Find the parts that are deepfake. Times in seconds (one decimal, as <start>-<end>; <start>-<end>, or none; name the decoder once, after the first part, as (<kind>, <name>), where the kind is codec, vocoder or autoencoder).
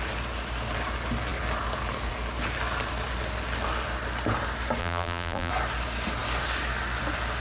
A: 4.8-5.5 (vocoder, BigVGAN v2)